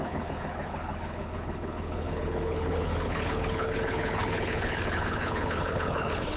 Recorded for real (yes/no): no